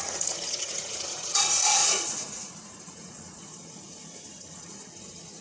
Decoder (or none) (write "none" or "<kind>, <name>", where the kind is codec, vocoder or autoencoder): vocoder, Vocos